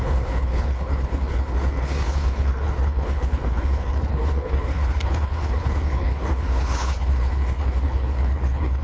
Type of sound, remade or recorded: remade